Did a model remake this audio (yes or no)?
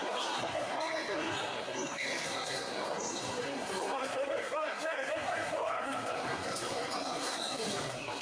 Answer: yes